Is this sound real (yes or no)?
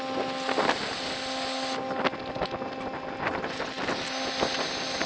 yes